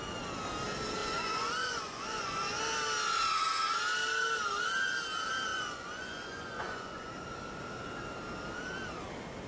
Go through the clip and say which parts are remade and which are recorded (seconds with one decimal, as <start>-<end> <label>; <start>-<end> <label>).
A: 0.0-1.0 recorded; 1.0-2.6 remade; 2.6-5.5 recorded; 5.5-7.1 remade; 7.1-9.5 recorded